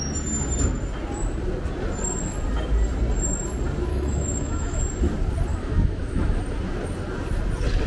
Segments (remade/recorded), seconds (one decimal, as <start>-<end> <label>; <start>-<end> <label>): 0.0-3.9 recorded; 3.9-4.8 remade; 4.8-5.5 recorded; 5.5-6.4 remade; 6.4-7.9 recorded